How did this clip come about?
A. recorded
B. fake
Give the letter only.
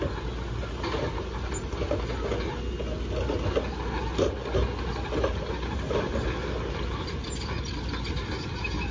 A